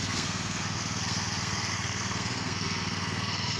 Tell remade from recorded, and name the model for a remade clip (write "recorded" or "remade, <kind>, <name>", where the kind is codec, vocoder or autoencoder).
remade, codec, SNAC